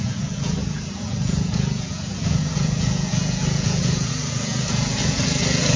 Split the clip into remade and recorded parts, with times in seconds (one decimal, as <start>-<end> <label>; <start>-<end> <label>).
0.0-5.8 remade